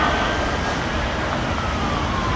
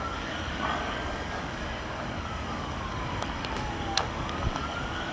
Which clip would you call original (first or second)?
first